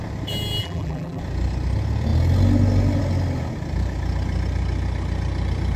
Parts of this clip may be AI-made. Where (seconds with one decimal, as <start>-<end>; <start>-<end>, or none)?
0.6-1.2